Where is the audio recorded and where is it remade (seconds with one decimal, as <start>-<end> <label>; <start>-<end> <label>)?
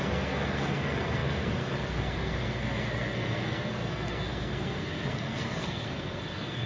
0.0-6.7 remade